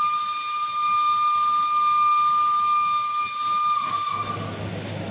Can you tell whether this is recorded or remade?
recorded